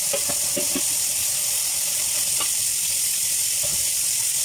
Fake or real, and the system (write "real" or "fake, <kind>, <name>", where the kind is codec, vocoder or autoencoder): fake, vocoder, BigVGAN v2